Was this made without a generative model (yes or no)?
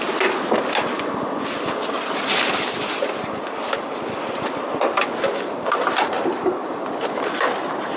yes